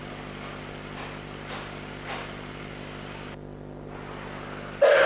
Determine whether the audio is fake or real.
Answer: real